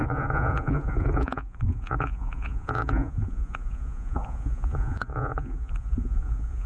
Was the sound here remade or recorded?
remade